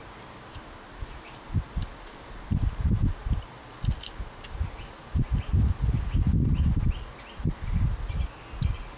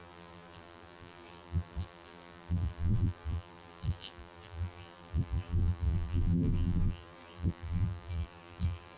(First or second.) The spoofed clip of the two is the second